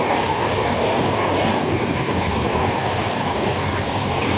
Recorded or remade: remade